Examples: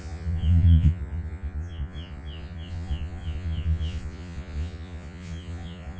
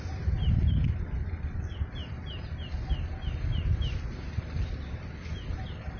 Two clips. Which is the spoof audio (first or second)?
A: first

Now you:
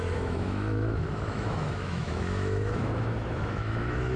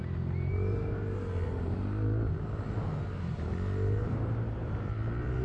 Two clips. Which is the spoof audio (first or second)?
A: first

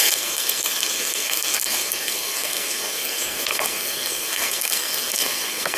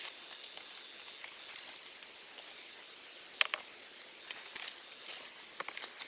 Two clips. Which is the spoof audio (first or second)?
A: first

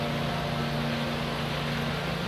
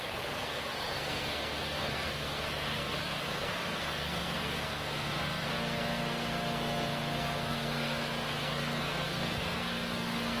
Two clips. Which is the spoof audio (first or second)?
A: second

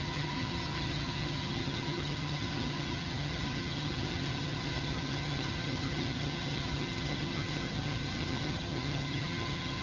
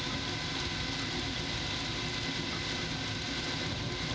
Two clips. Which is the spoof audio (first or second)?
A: first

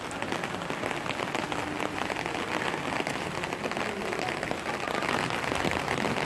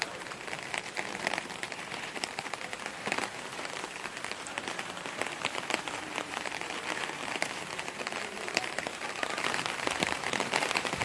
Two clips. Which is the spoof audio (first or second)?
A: second